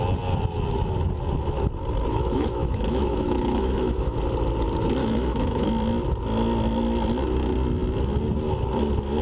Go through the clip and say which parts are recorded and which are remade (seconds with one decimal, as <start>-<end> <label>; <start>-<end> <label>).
0.0-2.1 recorded; 2.1-4.2 remade; 4.2-5.0 recorded; 5.0-5.7 remade; 5.7-9.2 recorded